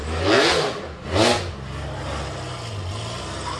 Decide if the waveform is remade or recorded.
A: recorded